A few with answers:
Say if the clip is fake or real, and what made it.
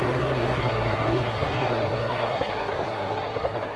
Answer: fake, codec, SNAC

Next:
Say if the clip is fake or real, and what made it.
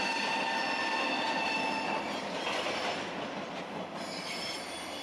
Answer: real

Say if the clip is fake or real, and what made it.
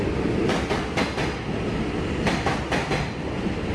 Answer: real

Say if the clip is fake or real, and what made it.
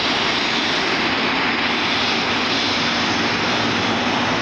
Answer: real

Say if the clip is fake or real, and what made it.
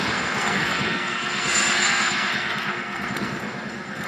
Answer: fake, codec, SNAC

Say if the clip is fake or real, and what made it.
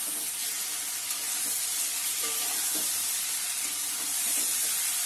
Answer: real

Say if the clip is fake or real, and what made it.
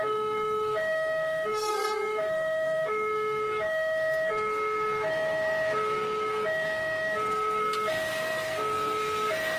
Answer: fake, codec, SNAC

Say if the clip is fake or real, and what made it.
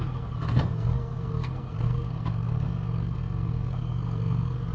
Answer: fake, codec, SNAC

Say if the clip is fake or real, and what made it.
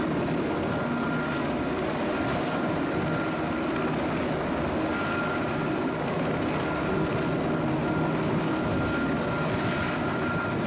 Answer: real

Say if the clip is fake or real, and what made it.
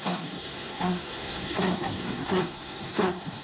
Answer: fake, codec, SNAC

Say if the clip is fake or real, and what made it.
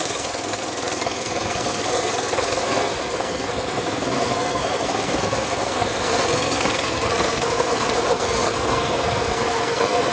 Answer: fake, codec, SNAC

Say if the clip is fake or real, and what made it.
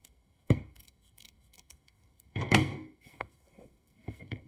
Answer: fake, codec, SNAC